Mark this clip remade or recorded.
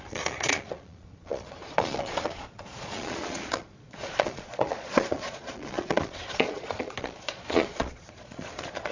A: remade